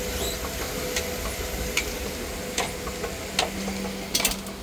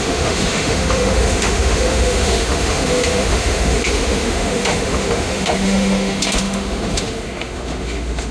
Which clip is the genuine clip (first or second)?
first